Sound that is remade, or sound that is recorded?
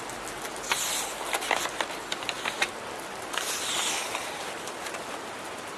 recorded